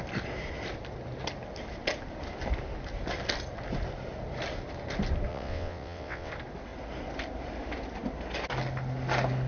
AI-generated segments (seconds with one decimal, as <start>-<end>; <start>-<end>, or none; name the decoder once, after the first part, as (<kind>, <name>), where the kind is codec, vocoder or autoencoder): 5.3-6.3 (vocoder, WaveNeXt)